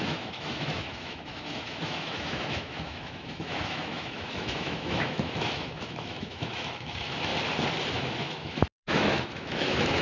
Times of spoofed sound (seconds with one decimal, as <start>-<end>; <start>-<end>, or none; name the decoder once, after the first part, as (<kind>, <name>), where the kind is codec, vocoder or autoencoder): 0.0-7.3 (autoencoder, DAC-VAE); 7.9-10.0